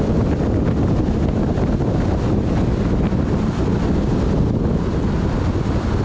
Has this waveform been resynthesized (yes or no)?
no